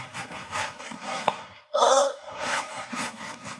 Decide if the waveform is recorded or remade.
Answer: remade